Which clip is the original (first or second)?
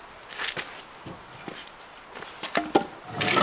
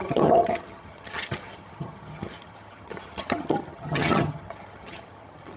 first